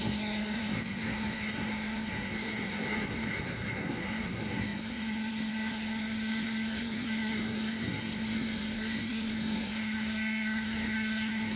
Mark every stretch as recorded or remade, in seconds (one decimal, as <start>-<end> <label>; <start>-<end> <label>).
0.0-11.6 remade